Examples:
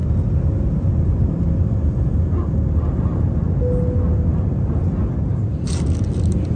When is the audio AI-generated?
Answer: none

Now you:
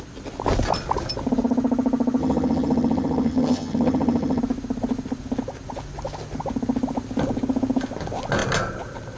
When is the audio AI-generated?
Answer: 2.2-4.4 (vocoder, HiFi-GAN)

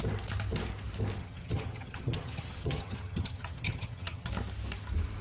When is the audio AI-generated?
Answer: 1.2-4.3 (vocoder, HiFi-GAN)

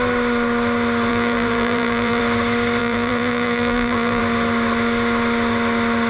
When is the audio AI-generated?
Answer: 1.1-2.2 (vocoder, BigVGAN v2); 2.8-4.2

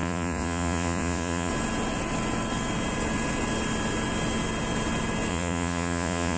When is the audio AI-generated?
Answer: 0.0-1.5 (vocoder, Vocos); 5.3-6.4

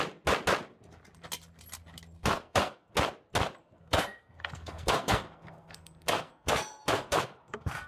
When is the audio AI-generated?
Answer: 2.2-2.9 (codec, SNAC); 3.6-7.9

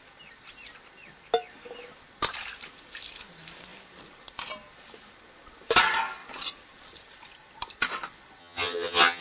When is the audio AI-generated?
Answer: 8.4-9.2 (vocoder, HiFi-GAN)